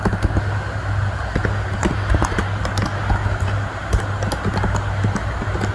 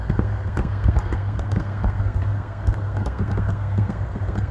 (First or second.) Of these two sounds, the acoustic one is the first